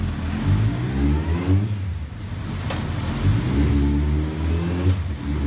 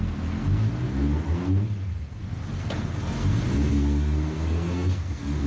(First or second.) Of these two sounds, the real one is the first